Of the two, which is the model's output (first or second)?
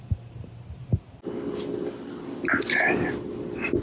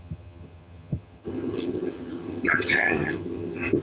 second